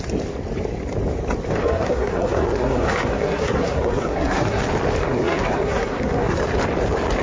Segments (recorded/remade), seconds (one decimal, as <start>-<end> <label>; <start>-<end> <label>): 0.0-1.6 recorded; 1.6-4.6 remade; 4.6-5.0 recorded; 5.0-6.4 remade; 6.4-7.2 recorded

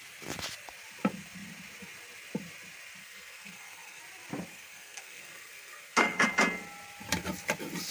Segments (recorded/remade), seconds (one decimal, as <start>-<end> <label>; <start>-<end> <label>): 0.0-3.0 recorded; 3.0-4.0 remade; 4.0-4.5 recorded; 4.5-6.3 remade; 6.3-7.9 recorded

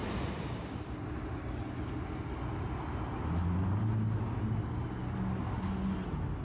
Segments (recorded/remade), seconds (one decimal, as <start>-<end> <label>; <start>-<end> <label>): 0.0-6.4 recorded

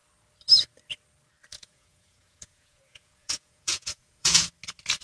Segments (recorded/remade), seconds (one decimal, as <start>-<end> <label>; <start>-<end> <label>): 0.0-1.5 recorded; 1.5-4.5 remade; 4.5-5.0 recorded

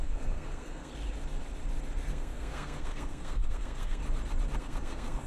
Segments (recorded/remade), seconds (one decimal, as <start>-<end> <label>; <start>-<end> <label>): 0.0-0.9 remade; 0.9-2.1 recorded; 2.1-4.0 remade; 4.0-4.6 recorded; 4.6-5.3 remade